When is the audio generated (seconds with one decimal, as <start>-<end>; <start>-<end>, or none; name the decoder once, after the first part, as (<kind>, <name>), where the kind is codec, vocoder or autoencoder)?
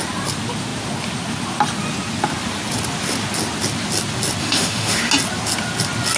4.4-5.1 (autoencoder, DAC-VAE)